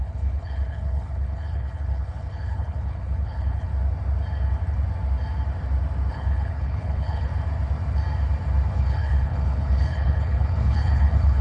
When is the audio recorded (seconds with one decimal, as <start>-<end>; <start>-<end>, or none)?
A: 3.7-6.1; 7.3-8.7